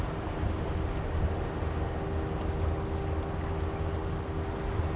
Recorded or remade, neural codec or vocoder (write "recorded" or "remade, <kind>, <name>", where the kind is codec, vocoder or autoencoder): recorded